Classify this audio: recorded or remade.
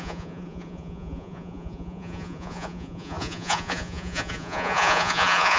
remade